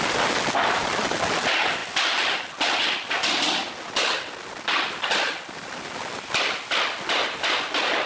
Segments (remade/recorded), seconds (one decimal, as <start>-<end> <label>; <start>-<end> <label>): 0.0-8.1 recorded